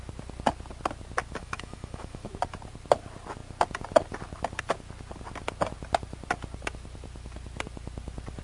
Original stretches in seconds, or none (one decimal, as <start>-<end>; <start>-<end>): 0.0-1.4; 2.3-8.4